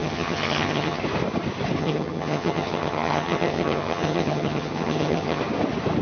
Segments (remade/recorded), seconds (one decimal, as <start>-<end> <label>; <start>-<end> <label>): 0.0-1.0 remade; 1.0-1.8 recorded; 1.8-5.4 remade; 5.4-6.0 recorded